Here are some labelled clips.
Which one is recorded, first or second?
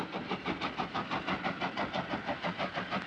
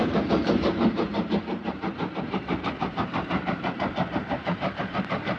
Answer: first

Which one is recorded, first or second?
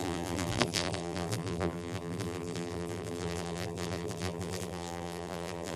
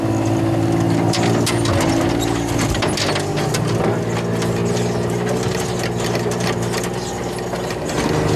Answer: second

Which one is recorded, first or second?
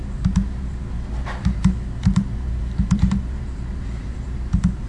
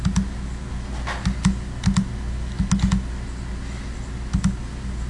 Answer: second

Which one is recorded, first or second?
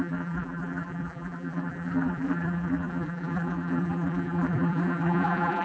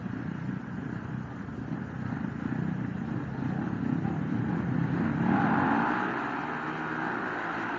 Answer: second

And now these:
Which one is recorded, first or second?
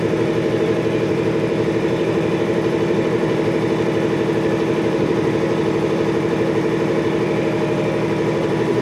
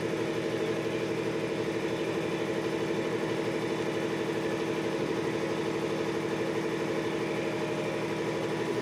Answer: second